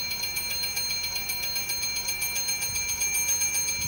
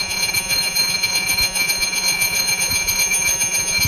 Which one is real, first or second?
first